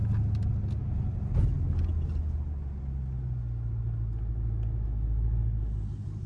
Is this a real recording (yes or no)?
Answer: yes